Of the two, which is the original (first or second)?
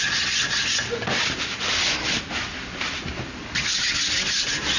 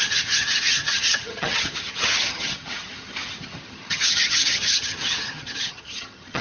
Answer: first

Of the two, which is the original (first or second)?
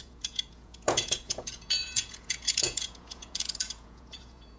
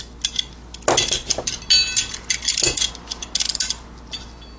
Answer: second